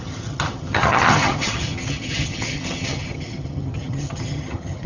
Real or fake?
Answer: fake